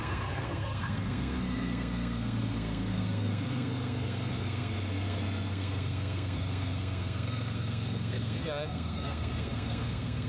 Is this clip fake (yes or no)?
yes